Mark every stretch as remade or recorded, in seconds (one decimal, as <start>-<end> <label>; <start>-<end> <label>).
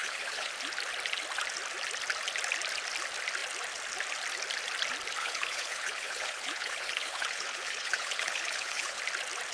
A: 0.0-0.5 remade; 0.5-5.2 recorded; 5.2-9.0 remade; 9.0-9.5 recorded